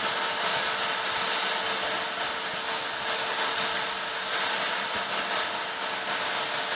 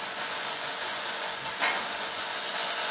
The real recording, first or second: first